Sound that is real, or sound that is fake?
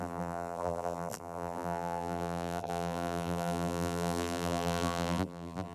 fake